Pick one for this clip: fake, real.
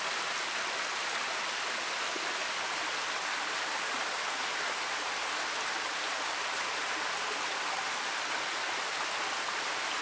real